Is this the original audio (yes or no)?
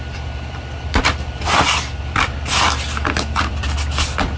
no